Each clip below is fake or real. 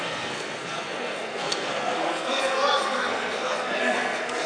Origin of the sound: fake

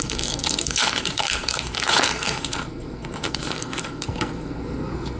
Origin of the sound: fake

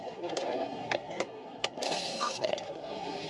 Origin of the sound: fake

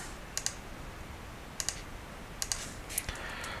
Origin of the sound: real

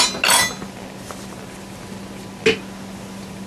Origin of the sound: real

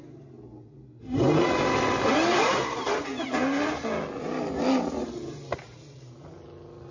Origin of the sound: real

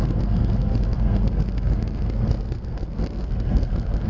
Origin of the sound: fake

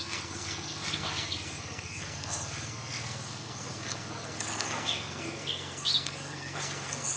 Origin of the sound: fake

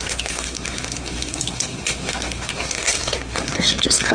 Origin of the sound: fake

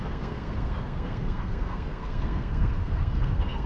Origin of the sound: fake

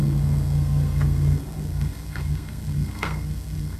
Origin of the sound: fake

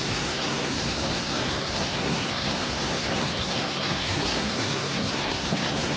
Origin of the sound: fake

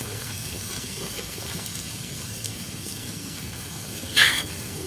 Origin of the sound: fake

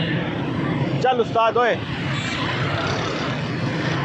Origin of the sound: real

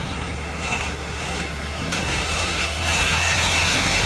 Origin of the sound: fake